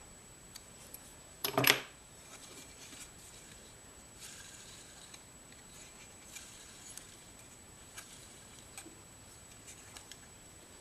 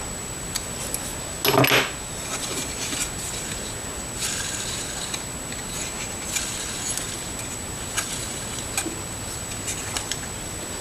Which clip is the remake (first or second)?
first